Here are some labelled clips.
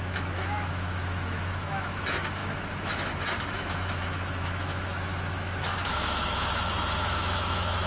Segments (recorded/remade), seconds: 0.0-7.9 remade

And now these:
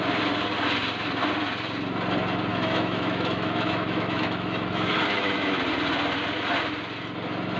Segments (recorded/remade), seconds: 0.0-2.5 recorded; 2.5-5.6 remade; 5.6-7.6 recorded

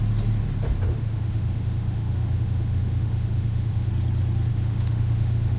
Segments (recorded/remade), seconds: 0.0-0.9 recorded; 0.9-3.9 remade; 3.9-4.5 recorded; 4.5-5.6 remade

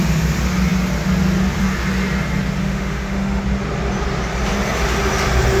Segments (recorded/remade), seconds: 0.0-2.6 recorded; 2.6-3.4 remade; 3.4-5.6 recorded

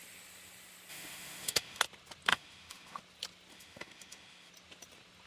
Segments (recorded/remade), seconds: 0.0-0.9 recorded; 0.9-1.8 remade; 1.8-2.3 recorded; 2.3-3.0 remade; 3.0-3.5 recorded; 3.5-4.5 remade; 4.5-5.3 recorded

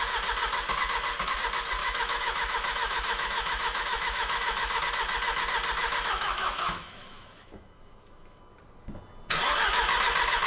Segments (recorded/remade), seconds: 0.0-1.8 recorded; 1.8-4.8 remade; 4.8-5.8 recorded; 5.8-8.4 remade; 8.4-10.5 recorded

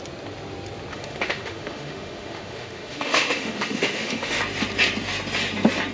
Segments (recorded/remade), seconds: 0.0-0.9 recorded; 0.9-4.4 remade; 4.4-5.9 recorded